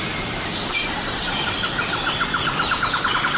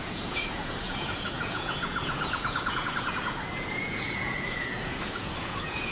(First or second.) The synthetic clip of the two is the second